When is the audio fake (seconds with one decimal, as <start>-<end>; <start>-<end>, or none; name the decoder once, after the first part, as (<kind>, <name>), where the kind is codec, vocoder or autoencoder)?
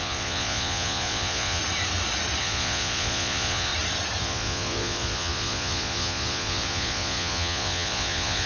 0.0-1.6 (vocoder, Vocos); 2.4-3.7; 4.2-8.5